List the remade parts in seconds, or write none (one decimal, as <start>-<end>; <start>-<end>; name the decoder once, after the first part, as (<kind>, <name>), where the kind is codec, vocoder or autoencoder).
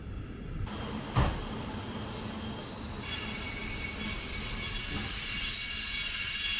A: none